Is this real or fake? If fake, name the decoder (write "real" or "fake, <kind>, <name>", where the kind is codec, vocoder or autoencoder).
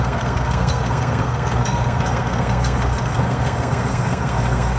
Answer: fake, codec, SNAC